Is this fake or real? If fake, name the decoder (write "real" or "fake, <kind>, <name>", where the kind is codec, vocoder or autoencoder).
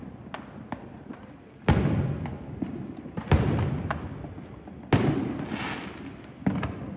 real